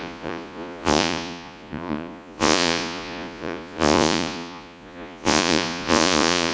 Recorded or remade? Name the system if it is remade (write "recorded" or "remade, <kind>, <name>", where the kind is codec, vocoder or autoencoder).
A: remade, vocoder, Vocos